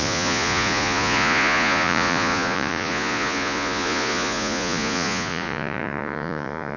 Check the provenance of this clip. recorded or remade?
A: remade